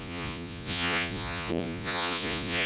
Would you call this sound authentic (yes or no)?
no